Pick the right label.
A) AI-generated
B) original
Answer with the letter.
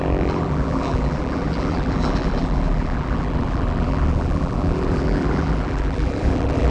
A